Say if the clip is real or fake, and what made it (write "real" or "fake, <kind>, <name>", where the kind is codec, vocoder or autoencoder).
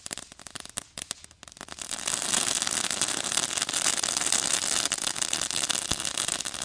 real